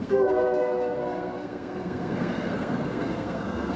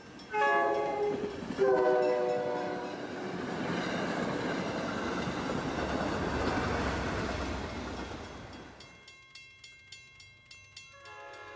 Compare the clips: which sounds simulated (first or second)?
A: first